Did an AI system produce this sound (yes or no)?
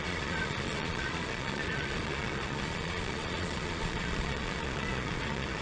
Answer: yes